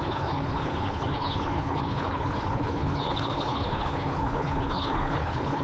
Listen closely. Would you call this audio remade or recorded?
remade